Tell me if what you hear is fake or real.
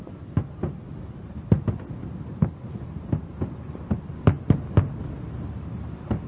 real